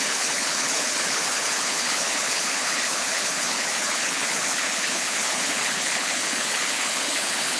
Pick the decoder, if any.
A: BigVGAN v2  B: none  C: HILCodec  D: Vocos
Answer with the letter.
C